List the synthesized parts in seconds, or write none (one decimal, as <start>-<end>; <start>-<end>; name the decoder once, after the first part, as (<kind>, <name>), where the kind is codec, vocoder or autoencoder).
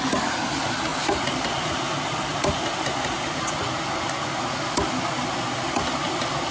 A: none